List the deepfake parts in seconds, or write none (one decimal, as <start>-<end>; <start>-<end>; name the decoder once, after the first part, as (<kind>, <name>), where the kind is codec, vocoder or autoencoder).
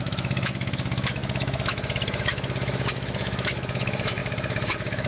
0.0-5.1 (autoencoder, DAC-VAE)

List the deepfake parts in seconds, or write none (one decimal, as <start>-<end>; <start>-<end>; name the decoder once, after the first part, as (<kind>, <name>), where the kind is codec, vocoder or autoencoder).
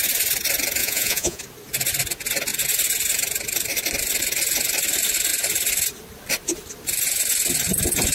0.8-1.4 (vocoder, Vocos)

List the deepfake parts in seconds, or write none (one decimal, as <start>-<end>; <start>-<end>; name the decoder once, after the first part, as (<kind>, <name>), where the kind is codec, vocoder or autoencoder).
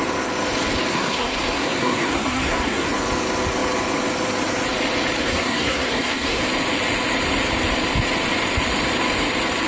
0.9-2.9 (codec, SNAC); 5.2-6.4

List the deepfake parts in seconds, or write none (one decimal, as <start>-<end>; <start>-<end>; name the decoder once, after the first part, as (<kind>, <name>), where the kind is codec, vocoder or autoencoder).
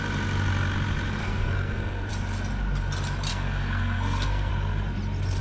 1.2-2.1 (codec, SNAC); 3.3-4.5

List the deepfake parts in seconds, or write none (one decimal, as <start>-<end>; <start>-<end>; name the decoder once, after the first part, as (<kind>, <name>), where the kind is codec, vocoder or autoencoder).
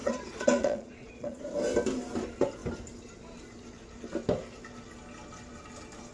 0.0-1.4 (vocoder, Vocos)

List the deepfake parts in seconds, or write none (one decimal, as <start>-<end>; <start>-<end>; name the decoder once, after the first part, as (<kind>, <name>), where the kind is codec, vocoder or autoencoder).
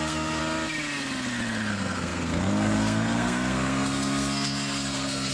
0.0-0.4 (codec, SNAC); 1.7-5.3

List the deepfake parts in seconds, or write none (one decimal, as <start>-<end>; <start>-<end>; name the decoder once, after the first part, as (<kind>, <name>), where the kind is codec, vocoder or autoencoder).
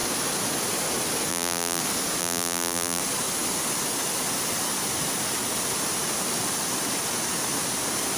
1.3-1.8 (vocoder, BigVGAN v2); 2.2-3.0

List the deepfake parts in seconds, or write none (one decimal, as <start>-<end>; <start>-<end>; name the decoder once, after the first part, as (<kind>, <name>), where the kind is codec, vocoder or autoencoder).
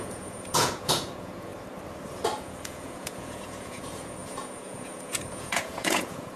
0.0-1.5 (vocoder, Vocos); 2.4-6.4